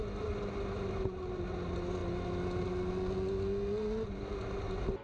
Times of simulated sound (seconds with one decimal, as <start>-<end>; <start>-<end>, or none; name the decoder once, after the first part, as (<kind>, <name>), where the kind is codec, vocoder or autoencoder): none